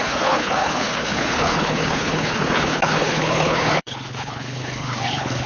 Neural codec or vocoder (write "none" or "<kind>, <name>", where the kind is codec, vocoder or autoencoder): codec, HILCodec